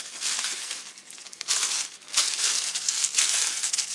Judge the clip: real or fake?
fake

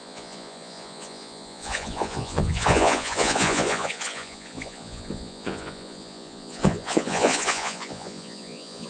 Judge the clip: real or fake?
fake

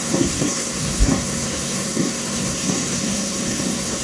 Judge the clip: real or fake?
fake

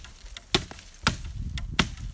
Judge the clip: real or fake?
real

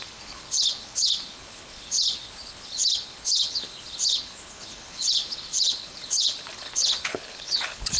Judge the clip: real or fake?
fake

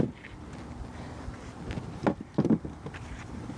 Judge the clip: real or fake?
real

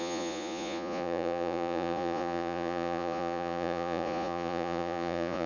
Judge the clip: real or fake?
fake